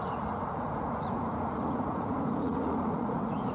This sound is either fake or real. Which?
fake